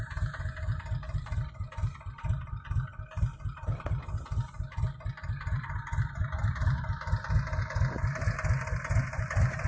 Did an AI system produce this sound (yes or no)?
no